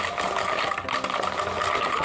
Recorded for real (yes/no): yes